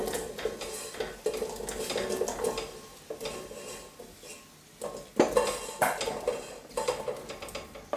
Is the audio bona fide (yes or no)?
yes